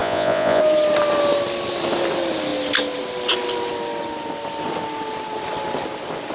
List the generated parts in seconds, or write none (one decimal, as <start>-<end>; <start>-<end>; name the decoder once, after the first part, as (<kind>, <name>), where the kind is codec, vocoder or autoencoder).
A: 0.0-0.6 (vocoder, Vocos)